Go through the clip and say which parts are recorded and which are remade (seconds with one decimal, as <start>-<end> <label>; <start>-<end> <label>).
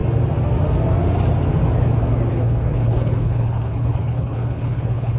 0.0-2.3 recorded; 2.3-5.2 remade